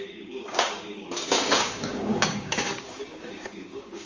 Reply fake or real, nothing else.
fake